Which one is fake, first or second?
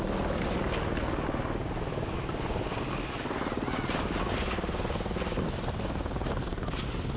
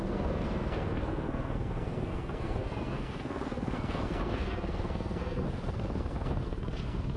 second